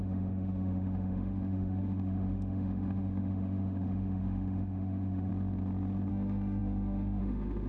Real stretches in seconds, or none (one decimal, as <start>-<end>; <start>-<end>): 5.3-6.1